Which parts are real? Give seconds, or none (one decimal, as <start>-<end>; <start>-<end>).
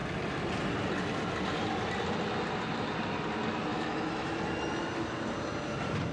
0.0-3.7; 4.4-6.1